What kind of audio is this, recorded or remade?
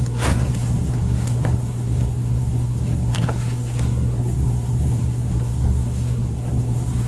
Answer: remade